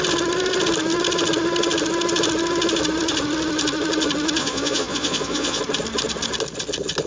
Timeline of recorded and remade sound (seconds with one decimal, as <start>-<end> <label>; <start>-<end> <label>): 0.0-4.4 recorded; 4.4-5.6 remade; 5.6-7.1 recorded